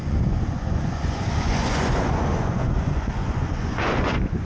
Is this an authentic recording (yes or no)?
no